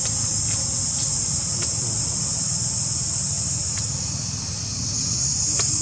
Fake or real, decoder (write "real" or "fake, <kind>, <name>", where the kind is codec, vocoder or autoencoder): real